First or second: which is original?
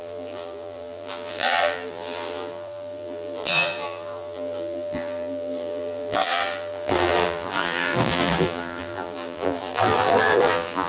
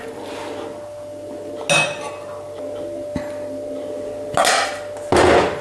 second